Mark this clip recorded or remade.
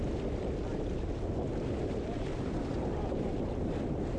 recorded